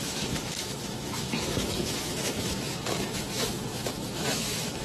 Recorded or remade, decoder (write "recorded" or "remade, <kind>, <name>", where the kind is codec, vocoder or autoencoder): remade, autoencoder, DAC-VAE